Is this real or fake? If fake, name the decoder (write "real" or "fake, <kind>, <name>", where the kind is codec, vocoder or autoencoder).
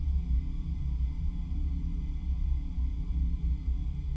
fake, vocoder, BigVGAN v2